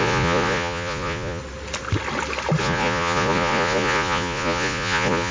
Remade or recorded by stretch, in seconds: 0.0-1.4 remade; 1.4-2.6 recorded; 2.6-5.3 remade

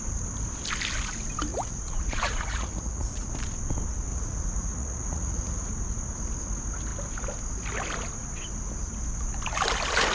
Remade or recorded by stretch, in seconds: 0.0-1.5 recorded; 1.5-3.3 remade; 3.3-4.1 recorded; 4.1-5.7 remade; 5.7-10.1 recorded

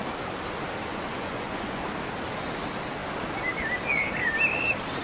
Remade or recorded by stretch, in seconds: 0.0-0.9 recorded; 0.9-1.8 remade; 1.8-5.0 recorded

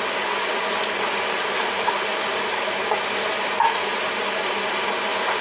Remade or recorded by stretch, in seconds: 0.0-5.4 recorded

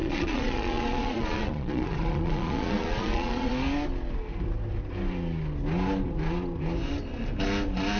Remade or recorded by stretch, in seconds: 0.0-3.5 remade; 3.5-8.0 recorded